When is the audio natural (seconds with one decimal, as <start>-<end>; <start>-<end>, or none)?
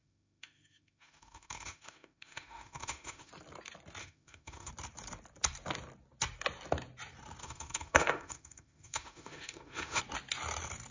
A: 3.3-4.0; 4.7-7.4; 10.0-10.9